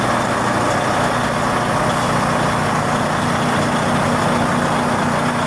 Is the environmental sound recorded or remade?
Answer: recorded